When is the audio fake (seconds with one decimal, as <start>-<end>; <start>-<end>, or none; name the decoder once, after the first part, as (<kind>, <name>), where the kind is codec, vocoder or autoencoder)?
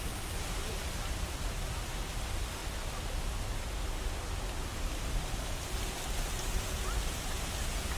none